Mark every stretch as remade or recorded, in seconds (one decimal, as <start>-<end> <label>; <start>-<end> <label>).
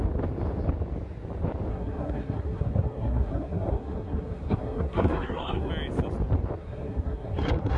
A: 0.0-1.7 recorded; 1.7-5.7 remade; 5.7-6.6 recorded; 6.6-7.8 remade